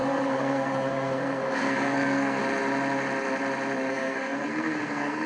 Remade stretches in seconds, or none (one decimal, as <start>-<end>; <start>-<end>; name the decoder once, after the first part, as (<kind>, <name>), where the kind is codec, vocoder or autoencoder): 0.0-2.4 (codec, SNAC); 3.9-5.3